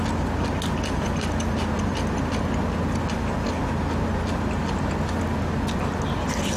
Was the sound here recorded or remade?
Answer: recorded